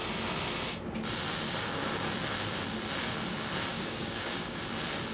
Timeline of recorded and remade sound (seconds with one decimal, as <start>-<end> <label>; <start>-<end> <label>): 0.0-3.7 recorded; 3.7-4.6 remade; 4.6-5.1 recorded